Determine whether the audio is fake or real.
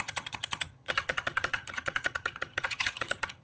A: fake